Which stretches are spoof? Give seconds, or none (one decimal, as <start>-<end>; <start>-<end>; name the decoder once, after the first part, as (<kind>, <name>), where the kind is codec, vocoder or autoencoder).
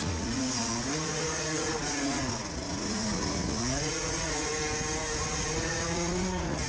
0.0-4.5 (vocoder, Vocos); 5.2-6.7